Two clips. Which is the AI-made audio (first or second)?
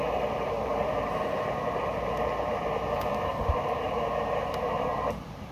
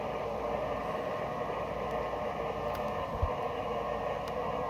first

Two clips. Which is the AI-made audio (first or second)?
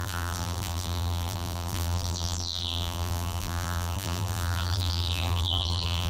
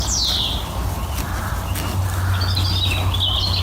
first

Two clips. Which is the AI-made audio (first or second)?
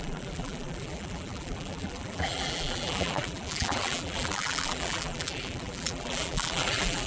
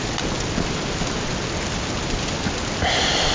first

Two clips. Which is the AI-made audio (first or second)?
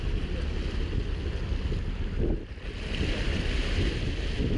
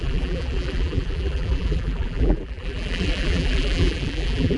second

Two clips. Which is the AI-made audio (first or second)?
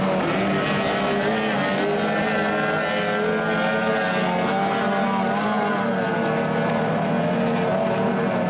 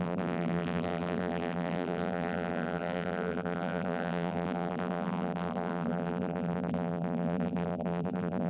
second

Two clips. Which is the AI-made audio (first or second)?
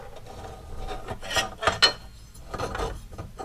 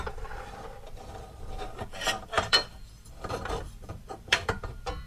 second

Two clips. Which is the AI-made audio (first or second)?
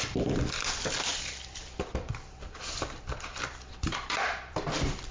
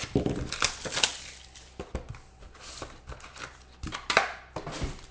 first